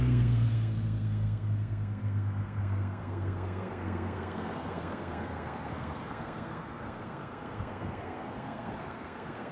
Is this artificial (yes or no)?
yes